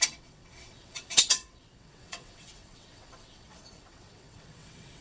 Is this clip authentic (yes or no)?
no